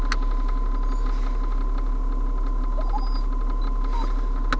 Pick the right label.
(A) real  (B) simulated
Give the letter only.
A